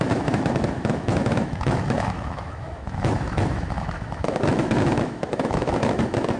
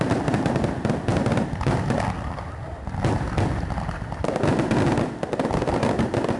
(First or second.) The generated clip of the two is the first